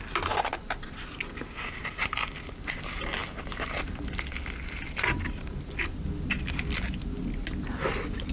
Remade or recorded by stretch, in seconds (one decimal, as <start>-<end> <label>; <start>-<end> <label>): 0.0-8.3 recorded